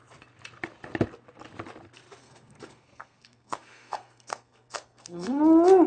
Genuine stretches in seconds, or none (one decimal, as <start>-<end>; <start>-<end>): 0.0-2.2; 5.4-5.9